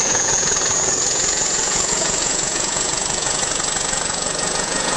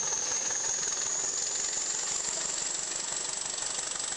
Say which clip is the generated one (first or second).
first